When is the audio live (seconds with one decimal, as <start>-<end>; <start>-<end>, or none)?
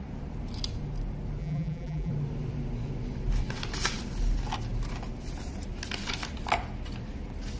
0.0-1.4; 2.1-7.6